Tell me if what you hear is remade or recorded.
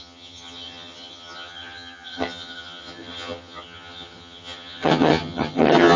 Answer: remade